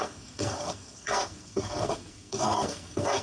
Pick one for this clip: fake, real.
fake